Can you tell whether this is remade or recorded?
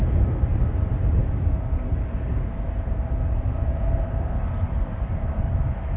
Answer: recorded